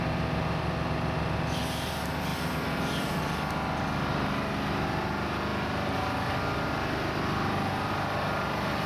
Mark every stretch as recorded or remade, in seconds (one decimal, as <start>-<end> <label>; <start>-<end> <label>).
0.0-8.9 recorded